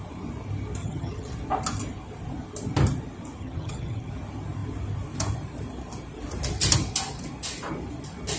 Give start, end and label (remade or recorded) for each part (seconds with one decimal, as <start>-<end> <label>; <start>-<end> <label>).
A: 0.0-0.8 recorded; 0.8-1.3 remade; 1.3-3.4 recorded; 3.4-4.1 remade; 4.1-8.4 recorded

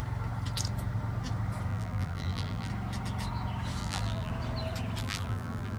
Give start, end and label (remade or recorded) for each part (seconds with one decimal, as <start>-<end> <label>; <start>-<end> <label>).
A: 0.0-1.7 recorded; 1.7-2.7 remade; 2.7-3.8 recorded; 3.8-4.3 remade; 4.3-5.0 recorded; 5.0-5.8 remade

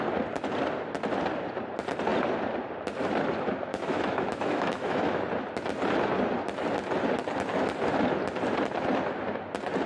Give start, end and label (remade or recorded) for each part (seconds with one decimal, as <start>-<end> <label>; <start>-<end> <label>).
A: 0.0-3.7 recorded; 3.7-5.2 remade; 5.2-9.9 recorded

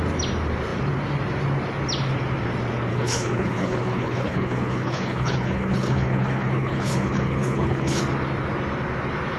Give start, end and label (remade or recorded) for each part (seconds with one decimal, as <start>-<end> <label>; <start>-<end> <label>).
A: 0.0-2.9 recorded; 2.9-8.0 remade; 8.0-9.4 recorded

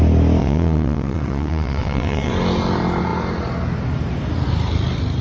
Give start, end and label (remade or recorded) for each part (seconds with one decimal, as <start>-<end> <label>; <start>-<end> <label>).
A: 0.0-0.4 recorded; 0.4-2.3 remade; 2.3-5.2 recorded

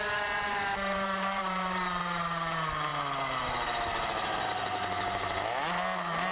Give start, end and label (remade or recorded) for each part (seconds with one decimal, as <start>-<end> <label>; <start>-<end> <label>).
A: 0.0-0.5 recorded; 0.5-2.0 remade; 2.0-6.3 recorded